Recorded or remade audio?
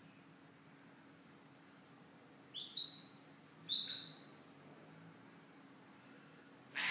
recorded